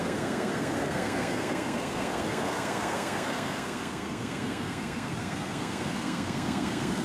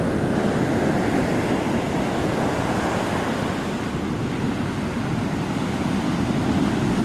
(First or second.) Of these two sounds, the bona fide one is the second